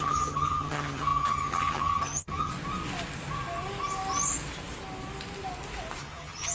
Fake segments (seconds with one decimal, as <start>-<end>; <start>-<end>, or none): 0.0-2.5; 6.0-6.5